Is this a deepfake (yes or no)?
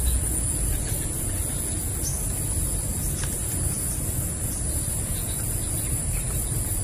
no